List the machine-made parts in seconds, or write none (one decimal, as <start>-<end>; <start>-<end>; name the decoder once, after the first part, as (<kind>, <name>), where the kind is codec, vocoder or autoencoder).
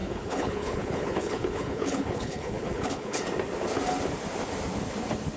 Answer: 0.0-3.2 (codec, HILCodec)